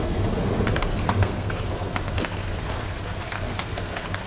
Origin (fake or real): fake